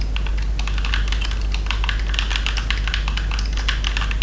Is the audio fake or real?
real